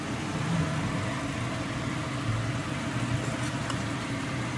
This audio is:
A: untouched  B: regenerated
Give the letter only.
A